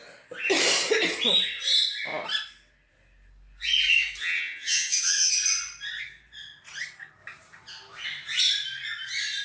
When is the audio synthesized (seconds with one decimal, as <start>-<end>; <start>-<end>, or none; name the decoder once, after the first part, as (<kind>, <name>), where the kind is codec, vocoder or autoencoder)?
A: 4.2-5.3 (vocoder, HiFi-GAN)